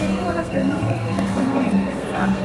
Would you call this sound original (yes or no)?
no